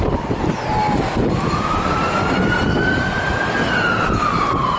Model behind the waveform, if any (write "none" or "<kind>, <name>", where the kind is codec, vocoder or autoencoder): none